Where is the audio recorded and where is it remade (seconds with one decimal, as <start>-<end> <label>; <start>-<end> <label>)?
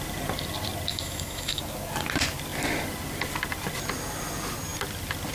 0.0-0.9 recorded; 0.9-1.6 remade; 1.6-5.3 recorded